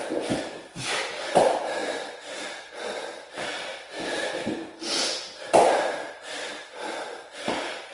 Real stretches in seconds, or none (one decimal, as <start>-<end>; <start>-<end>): 0.0-7.9